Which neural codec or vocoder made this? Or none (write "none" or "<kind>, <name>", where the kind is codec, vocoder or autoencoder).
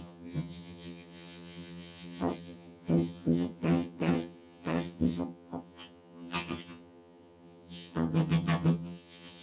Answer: vocoder, HiFi-GAN